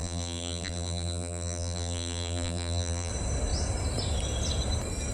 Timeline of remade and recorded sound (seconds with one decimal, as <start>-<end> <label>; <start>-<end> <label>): 0.0-3.1 remade; 3.1-5.1 recorded

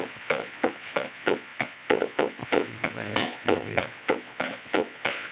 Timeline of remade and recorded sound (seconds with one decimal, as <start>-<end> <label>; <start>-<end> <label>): 0.0-5.3 remade

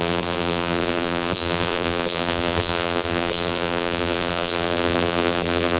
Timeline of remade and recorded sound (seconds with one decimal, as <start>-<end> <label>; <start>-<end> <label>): 0.0-5.8 remade

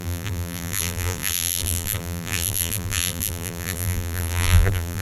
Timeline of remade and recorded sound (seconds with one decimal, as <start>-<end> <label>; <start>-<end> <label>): 0.0-5.0 remade

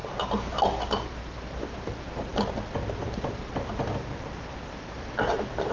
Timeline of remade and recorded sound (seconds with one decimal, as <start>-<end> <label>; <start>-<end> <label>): 0.0-5.7 recorded

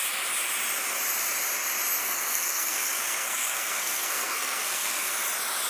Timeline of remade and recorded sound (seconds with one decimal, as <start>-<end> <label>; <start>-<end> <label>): 0.0-2.0 recorded; 2.0-5.1 remade; 5.1-5.7 recorded